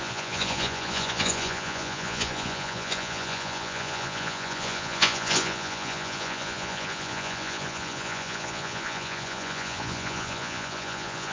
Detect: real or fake fake